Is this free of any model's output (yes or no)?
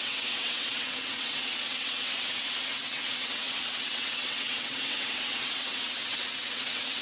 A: no